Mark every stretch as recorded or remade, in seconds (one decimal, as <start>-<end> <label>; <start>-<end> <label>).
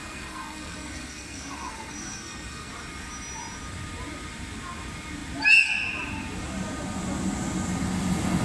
0.0-2.7 remade; 2.7-8.4 recorded